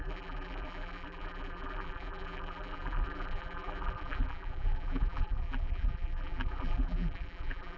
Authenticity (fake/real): fake